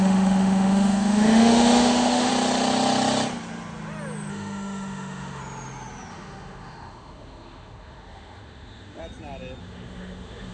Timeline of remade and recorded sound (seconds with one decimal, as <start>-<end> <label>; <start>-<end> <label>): 0.0-2.3 remade; 2.3-4.3 recorded; 4.3-5.4 remade; 5.4-6.1 recorded; 6.1-9.0 remade; 9.0-9.6 recorded; 9.6-10.5 remade